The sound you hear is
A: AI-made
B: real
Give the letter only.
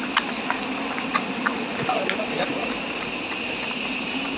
B